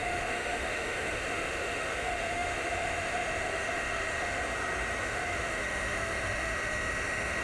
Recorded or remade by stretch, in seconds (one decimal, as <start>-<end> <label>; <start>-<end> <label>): 0.0-4.4 remade; 4.4-5.0 recorded; 5.0-7.4 remade